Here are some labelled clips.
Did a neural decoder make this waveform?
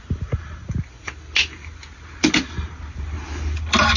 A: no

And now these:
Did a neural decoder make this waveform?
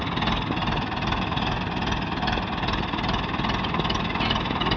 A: no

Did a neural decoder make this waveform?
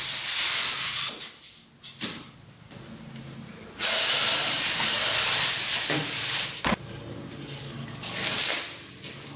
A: no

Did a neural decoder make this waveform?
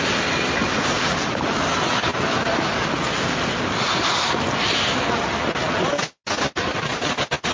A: no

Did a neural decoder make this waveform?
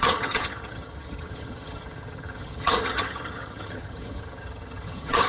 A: yes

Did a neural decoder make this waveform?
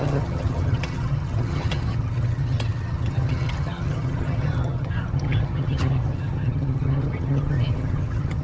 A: yes